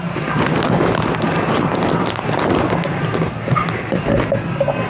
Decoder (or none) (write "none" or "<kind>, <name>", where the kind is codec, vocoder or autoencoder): none